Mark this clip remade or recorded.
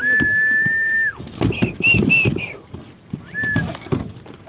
recorded